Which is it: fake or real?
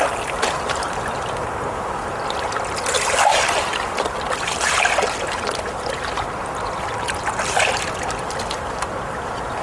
real